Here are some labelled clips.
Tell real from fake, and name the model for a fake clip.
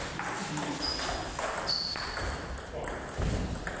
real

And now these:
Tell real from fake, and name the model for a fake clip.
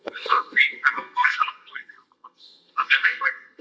fake, codec, SNAC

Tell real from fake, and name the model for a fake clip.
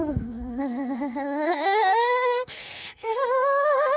fake, codec, SNAC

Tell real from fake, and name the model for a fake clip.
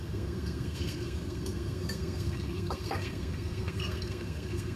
fake, codec, SNAC